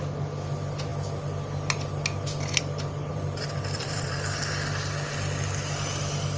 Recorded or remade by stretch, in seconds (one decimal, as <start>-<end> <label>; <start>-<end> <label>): 0.0-3.1 recorded; 3.1-4.4 remade; 4.4-6.4 recorded